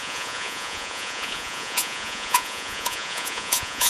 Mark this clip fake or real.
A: fake